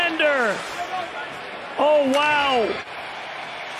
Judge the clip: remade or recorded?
recorded